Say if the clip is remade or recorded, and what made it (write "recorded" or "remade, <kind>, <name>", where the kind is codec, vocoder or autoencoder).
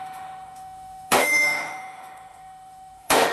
remade, autoencoder, DAC-VAE